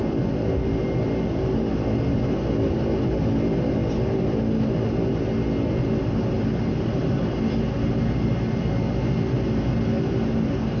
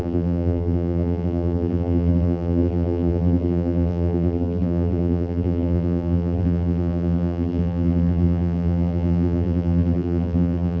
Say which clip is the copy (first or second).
second